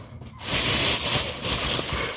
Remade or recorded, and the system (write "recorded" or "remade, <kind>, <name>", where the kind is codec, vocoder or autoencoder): recorded